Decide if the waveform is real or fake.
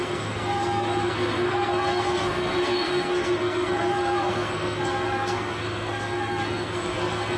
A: fake